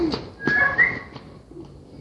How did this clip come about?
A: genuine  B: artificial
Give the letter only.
A